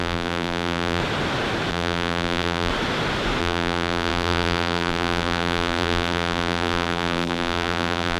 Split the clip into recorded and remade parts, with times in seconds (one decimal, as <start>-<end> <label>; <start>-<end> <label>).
0.0-1.0 remade; 1.0-1.7 recorded; 1.7-2.7 remade; 2.7-3.4 recorded; 3.4-8.2 remade